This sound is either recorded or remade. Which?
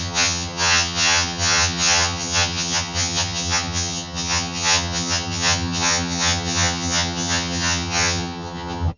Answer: remade